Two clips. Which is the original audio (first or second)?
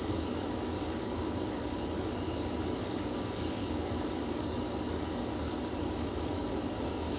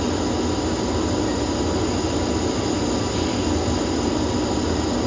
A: second